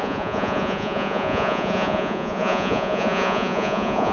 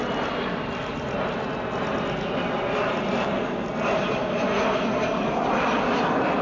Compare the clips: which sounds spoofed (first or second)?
first